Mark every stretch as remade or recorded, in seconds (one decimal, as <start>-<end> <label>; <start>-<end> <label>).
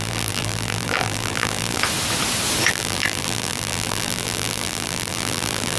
0.0-1.8 remade; 1.8-2.7 recorded; 2.7-5.8 remade